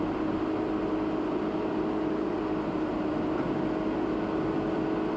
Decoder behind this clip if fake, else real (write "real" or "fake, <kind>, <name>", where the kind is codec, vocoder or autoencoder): real